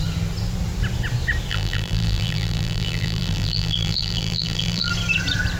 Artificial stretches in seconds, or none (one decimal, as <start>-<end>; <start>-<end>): 1.5-4.9